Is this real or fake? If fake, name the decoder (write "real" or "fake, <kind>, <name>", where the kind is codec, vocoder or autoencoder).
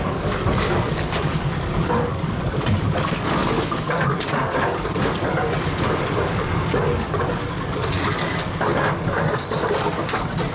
fake, codec, DAC